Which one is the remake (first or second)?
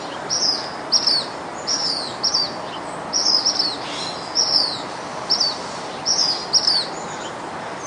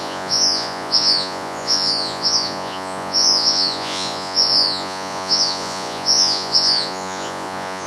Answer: second